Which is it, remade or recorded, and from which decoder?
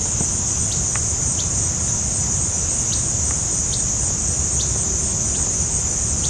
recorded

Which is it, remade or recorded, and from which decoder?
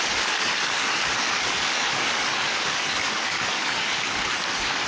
remade, codec, DAC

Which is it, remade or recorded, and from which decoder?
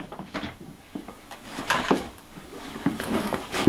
remade, codec, DAC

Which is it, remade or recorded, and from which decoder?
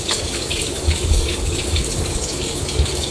remade, codec, DAC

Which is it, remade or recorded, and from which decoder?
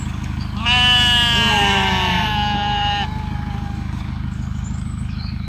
remade, codec, DAC